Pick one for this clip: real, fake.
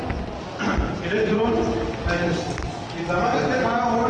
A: real